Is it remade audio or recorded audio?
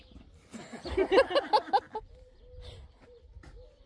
recorded